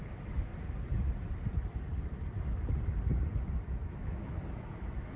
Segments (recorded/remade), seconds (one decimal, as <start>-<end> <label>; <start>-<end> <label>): 0.0-4.0 recorded; 4.0-5.2 remade